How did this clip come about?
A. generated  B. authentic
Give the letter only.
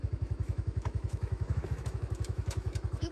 A